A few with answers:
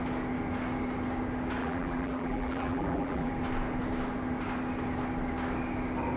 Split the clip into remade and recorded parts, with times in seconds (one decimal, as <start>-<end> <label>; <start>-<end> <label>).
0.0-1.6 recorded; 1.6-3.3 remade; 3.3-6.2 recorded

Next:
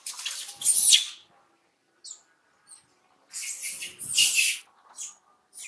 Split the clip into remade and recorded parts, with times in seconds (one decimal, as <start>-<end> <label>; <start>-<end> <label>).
0.0-5.7 recorded

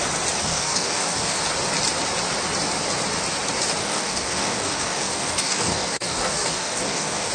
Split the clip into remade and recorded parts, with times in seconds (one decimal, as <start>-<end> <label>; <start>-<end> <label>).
0.0-0.4 recorded; 0.4-1.4 remade; 1.4-3.8 recorded; 3.8-7.3 remade

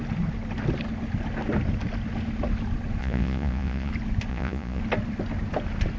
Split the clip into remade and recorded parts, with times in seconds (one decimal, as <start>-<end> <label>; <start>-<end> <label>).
0.0-3.0 recorded; 3.0-3.9 remade; 3.9-4.3 recorded; 4.3-4.8 remade; 4.8-6.0 recorded

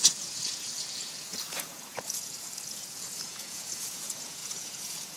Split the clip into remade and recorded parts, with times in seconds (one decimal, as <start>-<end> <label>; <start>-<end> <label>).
0.0-5.2 remade

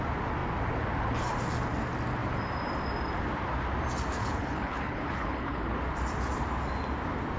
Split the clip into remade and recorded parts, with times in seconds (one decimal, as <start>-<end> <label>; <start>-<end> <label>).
0.0-4.2 recorded; 4.2-5.8 remade; 5.8-7.4 recorded